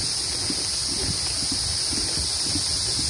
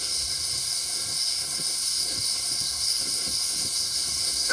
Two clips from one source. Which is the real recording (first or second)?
first